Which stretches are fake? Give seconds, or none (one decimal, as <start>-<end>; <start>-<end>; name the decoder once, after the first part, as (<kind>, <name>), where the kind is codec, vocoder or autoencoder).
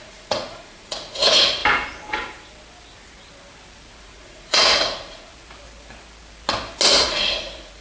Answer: 0.0-1.6 (vocoder, Vocos); 4.0-5.3; 6.9-7.8